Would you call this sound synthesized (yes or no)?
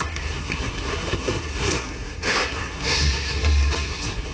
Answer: yes